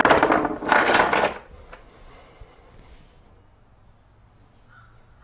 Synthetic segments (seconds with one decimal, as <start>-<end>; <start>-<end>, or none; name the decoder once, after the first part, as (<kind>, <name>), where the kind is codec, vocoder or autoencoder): none